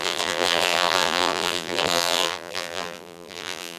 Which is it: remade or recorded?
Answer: remade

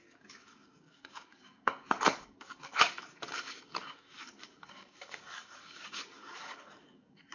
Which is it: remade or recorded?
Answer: remade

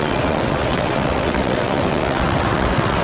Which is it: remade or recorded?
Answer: remade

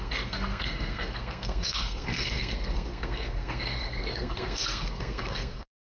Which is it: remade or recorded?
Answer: remade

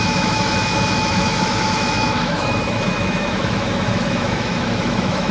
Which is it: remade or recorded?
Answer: remade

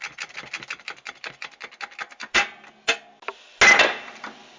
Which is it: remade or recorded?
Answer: recorded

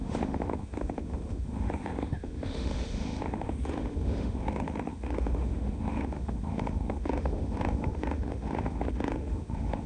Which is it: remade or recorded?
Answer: remade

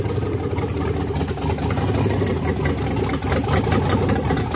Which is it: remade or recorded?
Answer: recorded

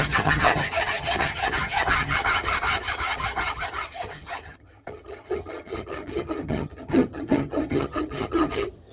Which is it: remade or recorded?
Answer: remade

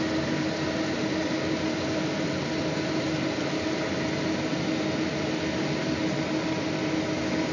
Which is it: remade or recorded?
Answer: recorded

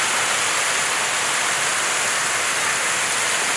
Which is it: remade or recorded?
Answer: recorded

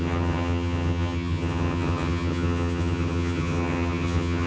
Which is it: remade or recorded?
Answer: remade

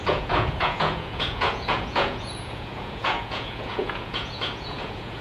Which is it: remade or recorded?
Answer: remade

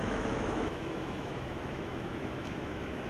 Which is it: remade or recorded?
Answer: remade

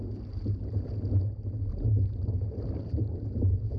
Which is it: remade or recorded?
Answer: recorded